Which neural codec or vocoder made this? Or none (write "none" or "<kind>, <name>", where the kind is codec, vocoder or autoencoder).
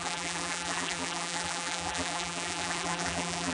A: vocoder, BigVGAN v2